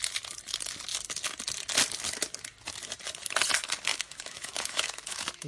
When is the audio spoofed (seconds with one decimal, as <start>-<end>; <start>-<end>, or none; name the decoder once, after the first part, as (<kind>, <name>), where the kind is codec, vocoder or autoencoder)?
3.9-5.5 (autoencoder, DAC-VAE)